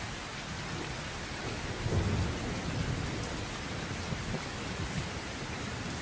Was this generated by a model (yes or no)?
no